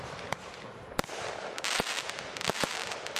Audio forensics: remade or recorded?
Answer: recorded